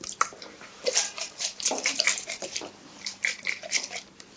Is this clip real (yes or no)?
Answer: no